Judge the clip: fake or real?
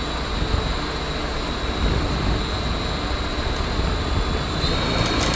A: real